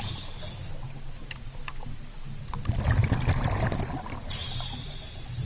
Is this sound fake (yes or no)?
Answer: no